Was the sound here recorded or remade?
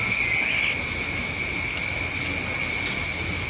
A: recorded